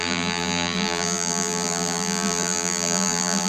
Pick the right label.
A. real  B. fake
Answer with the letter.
B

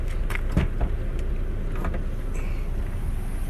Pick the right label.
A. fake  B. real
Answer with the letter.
B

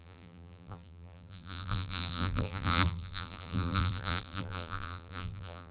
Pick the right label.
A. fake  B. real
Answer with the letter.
A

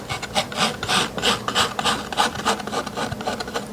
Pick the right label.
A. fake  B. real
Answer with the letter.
B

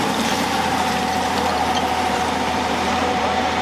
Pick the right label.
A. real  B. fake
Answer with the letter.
B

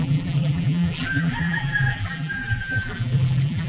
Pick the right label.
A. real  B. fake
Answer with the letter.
B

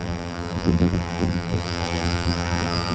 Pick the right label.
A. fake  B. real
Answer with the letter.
A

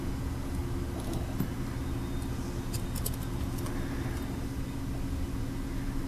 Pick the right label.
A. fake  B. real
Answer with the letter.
B